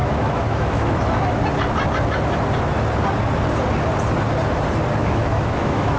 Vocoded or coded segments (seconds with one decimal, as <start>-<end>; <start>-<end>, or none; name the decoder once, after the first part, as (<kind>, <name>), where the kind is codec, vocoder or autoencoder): 0.0-1.4 (autoencoder, DAC-VAE); 5.0-6.0